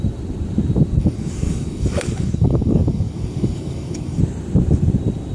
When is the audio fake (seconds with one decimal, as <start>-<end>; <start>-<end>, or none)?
1.0-4.2